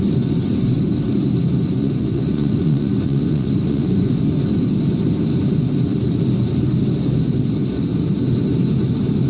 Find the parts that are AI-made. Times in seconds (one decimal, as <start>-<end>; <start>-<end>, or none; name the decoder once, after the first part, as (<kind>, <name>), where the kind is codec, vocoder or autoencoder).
1.7-4.1 (vocoder, Vocos)